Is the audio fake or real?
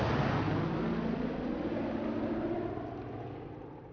real